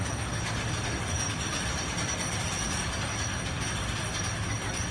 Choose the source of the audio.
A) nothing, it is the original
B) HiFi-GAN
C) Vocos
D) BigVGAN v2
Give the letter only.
A